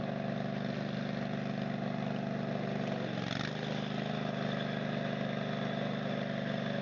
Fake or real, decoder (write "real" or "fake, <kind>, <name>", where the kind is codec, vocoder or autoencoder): real